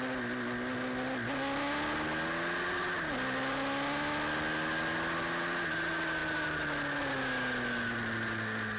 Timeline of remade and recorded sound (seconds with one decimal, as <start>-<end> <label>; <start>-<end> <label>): 0.0-8.8 recorded